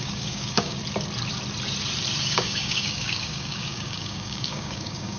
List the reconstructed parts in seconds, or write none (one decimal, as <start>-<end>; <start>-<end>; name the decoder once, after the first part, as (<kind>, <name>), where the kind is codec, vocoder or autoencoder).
0.0-0.8 (codec, DAC); 2.2-5.2